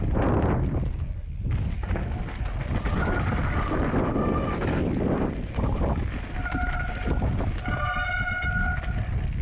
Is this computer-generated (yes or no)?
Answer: no